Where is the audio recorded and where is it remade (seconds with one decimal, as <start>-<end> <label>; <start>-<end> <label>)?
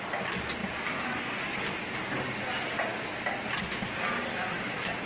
0.0-5.1 recorded